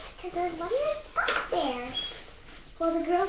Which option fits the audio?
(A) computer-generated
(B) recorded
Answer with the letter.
B